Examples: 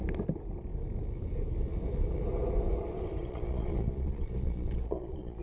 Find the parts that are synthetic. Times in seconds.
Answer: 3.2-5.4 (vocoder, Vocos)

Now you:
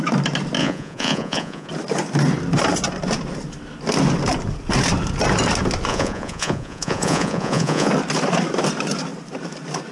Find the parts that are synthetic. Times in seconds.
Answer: 0.6-1.7 (vocoder, Vocos); 5.9-7.9

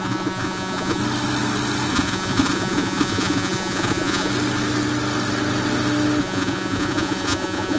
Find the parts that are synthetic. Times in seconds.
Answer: 0.0-1.0 (vocoder, Vocos); 1.9-4.3; 6.2-7.8